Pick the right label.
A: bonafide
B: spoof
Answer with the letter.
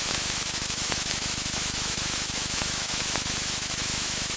B